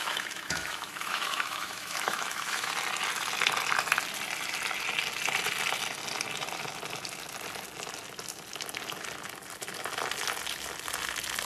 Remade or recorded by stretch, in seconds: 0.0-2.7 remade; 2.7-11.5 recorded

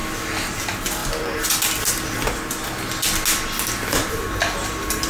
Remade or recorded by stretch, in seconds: 0.0-0.6 recorded; 0.6-1.0 remade; 1.0-4.1 recorded; 4.1-5.1 remade

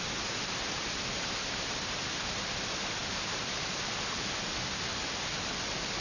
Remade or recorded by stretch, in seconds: 0.0-3.0 recorded; 3.0-3.5 remade; 3.5-6.0 recorded

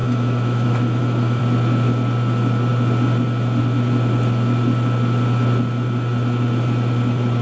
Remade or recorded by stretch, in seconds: 0.0-1.4 remade; 1.4-7.4 recorded